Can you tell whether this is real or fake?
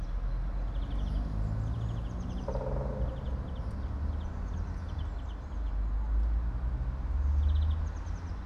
real